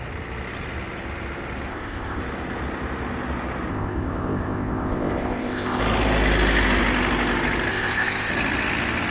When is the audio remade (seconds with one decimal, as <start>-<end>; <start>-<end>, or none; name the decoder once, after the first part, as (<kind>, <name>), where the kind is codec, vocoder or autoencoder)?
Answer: 1.7-2.2 (codec, ZipCodec); 3.7-5.8; 7.7-8.3